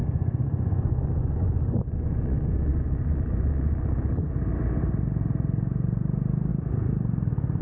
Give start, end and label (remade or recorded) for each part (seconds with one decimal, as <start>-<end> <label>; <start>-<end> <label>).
0.0-4.3 remade; 4.3-7.6 recorded